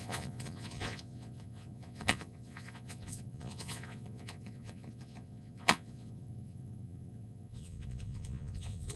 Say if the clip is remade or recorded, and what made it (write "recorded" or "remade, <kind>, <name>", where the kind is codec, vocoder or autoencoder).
remade, vocoder, Vocos